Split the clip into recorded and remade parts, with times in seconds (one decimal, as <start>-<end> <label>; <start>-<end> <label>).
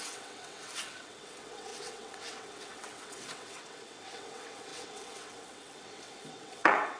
0.0-7.0 remade